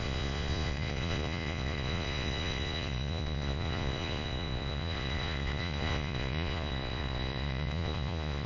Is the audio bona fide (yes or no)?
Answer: no